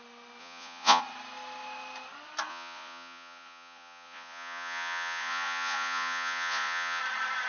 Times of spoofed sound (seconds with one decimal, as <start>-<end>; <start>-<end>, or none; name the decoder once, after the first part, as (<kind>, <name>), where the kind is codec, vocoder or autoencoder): 0.4-1.0 (vocoder, Vocos); 2.5-7.0